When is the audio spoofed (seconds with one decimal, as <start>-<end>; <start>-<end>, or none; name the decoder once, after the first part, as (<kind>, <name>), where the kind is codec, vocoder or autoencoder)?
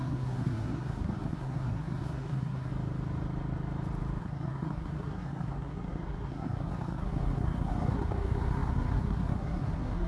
0.0-2.7 (codec, SNAC); 4.2-10.1